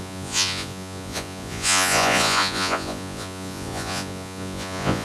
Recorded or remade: remade